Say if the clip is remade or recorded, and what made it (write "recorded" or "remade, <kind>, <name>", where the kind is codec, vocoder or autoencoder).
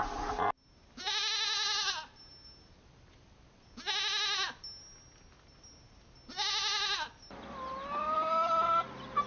recorded